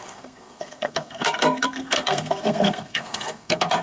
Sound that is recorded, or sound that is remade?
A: remade